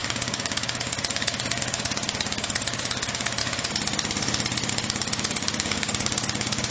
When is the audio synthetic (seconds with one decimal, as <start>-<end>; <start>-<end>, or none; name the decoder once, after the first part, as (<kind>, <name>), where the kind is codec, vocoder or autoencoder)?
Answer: 0.0-3.4 (codec, DAC); 4.7-6.7